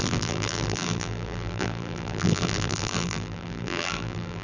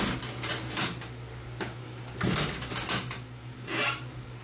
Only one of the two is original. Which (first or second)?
second